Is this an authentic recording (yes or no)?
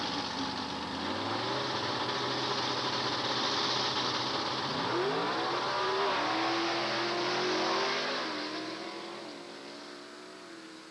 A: yes